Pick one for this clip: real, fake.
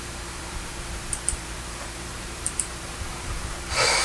fake